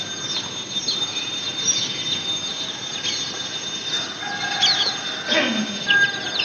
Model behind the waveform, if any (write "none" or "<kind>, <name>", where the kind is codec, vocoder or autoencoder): none